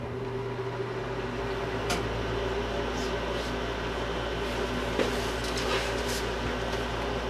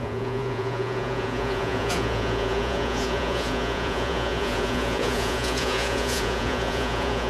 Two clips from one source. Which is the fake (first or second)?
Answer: second